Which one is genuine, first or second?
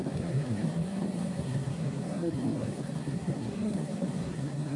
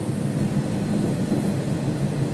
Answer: second